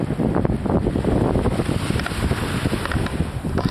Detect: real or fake real